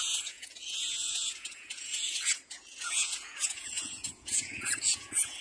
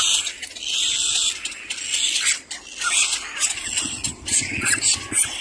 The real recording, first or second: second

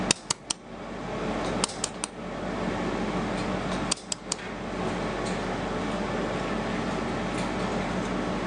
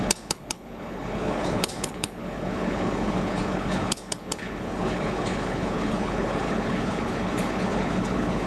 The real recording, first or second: first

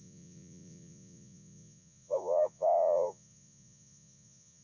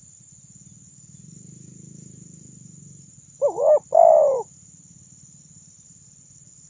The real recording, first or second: second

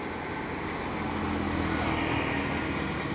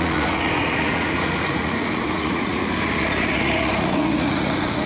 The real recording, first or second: first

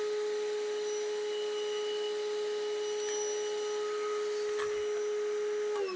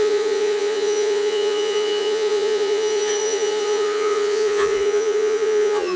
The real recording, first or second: first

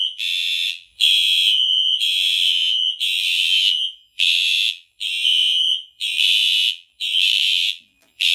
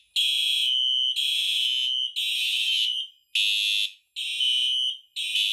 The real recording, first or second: second